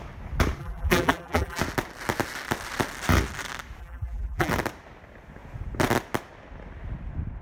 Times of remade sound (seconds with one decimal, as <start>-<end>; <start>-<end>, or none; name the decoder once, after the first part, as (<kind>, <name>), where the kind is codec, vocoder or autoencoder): 0.6-1.6 (vocoder, BigVGAN v2); 3.8-4.5